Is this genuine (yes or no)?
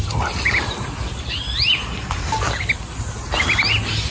yes